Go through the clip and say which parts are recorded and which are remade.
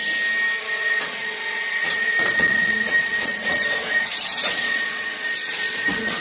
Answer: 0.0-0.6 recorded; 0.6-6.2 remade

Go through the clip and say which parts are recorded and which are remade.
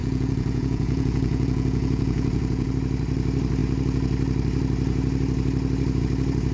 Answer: 0.0-2.7 remade; 2.7-6.5 recorded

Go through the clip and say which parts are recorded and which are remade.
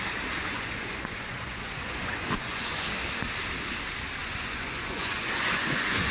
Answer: 0.0-0.4 recorded; 0.4-2.9 remade; 2.9-4.2 recorded; 4.2-6.1 remade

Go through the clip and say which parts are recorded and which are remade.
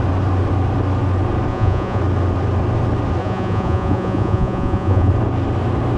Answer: 0.0-1.5 recorded; 1.5-2.0 remade; 2.0-3.2 recorded; 3.2-5.1 remade; 5.1-6.0 recorded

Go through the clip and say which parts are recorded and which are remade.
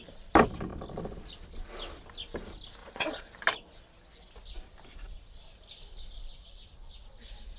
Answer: 0.0-2.8 recorded; 2.8-3.3 remade; 3.3-7.6 recorded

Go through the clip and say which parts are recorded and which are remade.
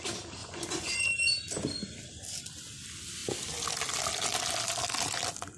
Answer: 0.0-0.4 recorded; 0.4-1.1 remade; 1.1-5.6 recorded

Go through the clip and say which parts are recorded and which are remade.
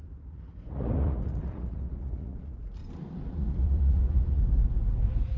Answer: 0.0-2.8 remade; 2.8-3.3 recorded; 3.3-4.4 remade; 4.4-5.4 recorded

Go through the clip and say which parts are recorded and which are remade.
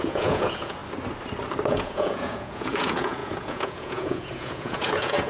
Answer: 0.0-0.8 remade; 0.8-1.7 recorded; 1.7-5.3 remade